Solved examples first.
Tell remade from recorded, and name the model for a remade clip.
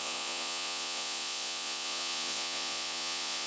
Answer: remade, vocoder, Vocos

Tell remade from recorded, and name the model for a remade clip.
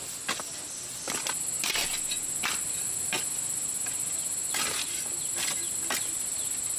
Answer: recorded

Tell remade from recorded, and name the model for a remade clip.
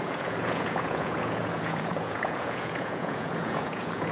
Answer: remade, vocoder, Vocos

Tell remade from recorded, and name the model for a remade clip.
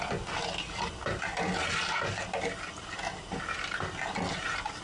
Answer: recorded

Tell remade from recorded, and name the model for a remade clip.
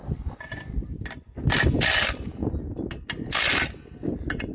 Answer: recorded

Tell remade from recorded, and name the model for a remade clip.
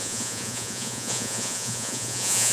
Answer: remade, vocoder, Vocos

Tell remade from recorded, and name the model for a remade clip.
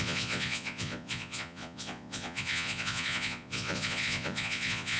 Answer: remade, vocoder, Vocos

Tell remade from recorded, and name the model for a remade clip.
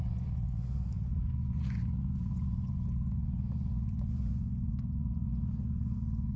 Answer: remade, vocoder, Vocos